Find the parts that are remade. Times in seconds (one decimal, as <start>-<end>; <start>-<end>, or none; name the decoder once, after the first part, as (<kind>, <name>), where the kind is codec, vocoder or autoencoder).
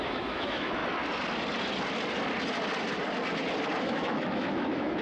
0.0-0.8 (autoencoder, DAC-VAE); 3.8-5.0